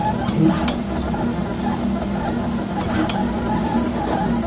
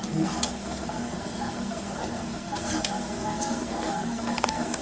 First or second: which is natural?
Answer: first